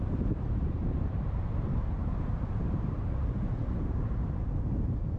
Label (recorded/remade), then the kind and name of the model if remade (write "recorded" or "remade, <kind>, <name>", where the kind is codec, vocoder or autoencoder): remade, vocoder, BigVGAN v2